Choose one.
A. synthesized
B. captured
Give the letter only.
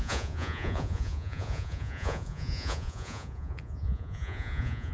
A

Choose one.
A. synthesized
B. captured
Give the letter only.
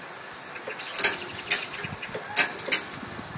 B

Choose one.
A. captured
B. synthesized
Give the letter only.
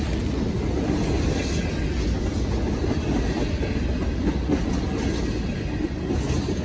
A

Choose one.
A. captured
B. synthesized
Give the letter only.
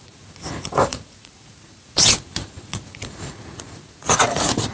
B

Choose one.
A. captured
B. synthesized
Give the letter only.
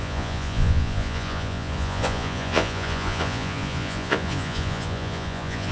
B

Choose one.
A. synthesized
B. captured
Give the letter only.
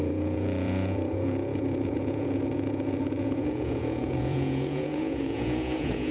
A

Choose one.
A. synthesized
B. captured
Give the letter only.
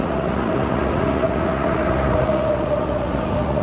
A